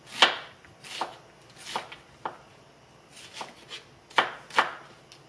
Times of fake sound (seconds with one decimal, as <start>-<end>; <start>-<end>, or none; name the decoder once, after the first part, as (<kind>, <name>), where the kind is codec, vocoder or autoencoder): none